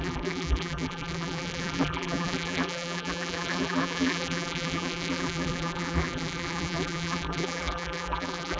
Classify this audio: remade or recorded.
remade